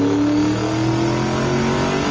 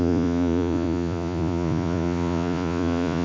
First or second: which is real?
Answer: first